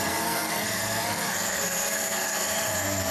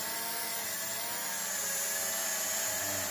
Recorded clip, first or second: second